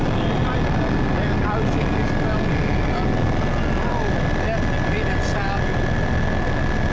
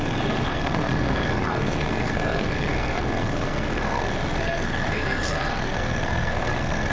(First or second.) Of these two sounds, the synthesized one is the second